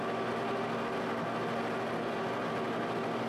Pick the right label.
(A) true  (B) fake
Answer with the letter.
A